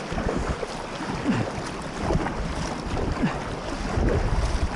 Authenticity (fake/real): real